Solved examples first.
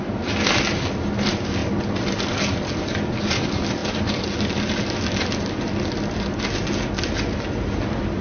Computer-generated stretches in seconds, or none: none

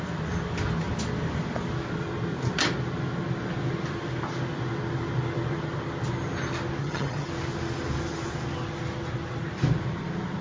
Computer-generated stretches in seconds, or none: 6.8-7.3 (vocoder, HiFi-GAN)